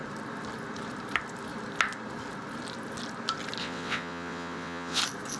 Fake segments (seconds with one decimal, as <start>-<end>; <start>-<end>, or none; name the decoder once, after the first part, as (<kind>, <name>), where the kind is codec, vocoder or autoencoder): 3.6-5.0 (vocoder, WaveNeXt)